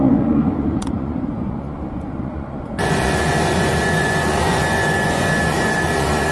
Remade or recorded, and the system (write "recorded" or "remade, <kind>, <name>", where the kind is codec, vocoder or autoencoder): remade, vocoder, Vocos